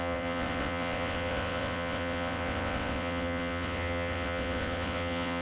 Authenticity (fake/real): fake